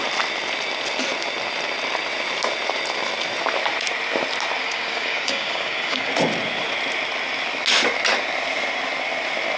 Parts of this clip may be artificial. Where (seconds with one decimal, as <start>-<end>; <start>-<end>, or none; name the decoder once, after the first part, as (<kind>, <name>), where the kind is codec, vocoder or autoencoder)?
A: 4.6-6.1 (codec, DAC)